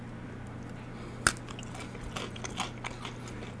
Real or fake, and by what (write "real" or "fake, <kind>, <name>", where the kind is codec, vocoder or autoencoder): real